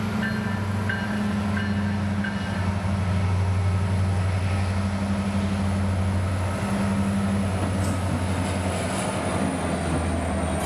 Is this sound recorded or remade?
recorded